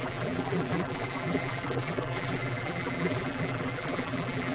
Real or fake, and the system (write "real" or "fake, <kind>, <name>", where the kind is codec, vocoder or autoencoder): fake, vocoder, BigVGAN v2